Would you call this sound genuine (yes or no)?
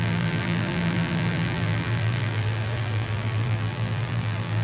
no